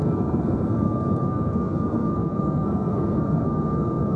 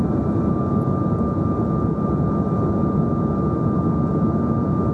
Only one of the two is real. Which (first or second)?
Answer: second